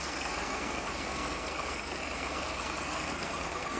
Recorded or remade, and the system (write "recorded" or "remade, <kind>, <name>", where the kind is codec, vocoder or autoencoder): remade, codec, SNAC